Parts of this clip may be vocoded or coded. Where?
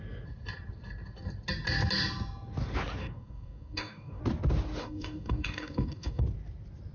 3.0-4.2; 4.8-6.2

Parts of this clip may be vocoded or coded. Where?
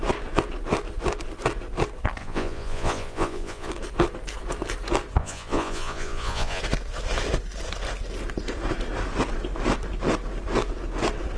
2.2-3.7; 5.2-6.6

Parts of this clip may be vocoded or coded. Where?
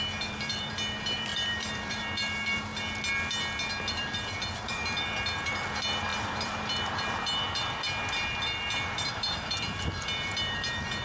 0.0-2.7; 3.9-11.0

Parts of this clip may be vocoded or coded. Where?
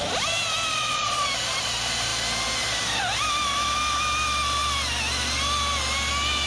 0.7-1.3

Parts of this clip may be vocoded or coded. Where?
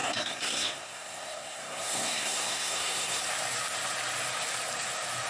0.0-3.2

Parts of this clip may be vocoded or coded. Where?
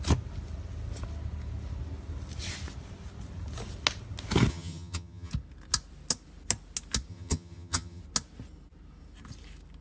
4.5-5.3; 7.1-8.0